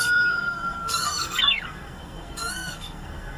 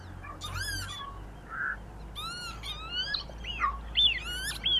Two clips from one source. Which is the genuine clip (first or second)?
second